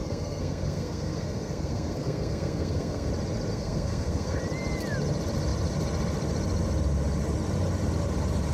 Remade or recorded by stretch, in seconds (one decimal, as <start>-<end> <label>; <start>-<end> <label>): 0.0-3.1 remade; 3.1-3.5 recorded; 3.5-4.4 remade; 4.4-8.5 recorded